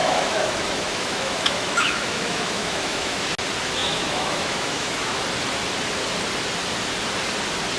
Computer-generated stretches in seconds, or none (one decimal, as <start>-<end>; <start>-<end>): 0.0-3.3; 3.8-5.2